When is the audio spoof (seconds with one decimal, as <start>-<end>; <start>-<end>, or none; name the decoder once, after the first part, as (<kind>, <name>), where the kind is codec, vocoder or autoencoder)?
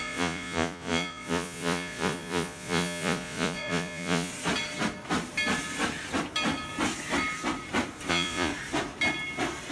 0.0-4.3 (vocoder, Vocos); 8.1-8.5